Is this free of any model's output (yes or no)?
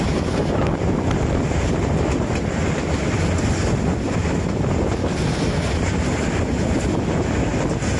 yes